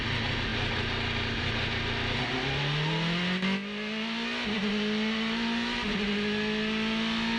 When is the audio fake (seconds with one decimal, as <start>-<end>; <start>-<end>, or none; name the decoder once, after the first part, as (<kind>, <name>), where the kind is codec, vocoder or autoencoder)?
none